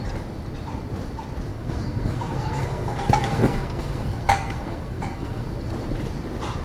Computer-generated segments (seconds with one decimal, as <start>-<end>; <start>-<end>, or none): 1.5-5.5